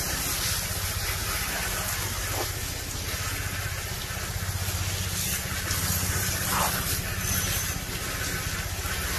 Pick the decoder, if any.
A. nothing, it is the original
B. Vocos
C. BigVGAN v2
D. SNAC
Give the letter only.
A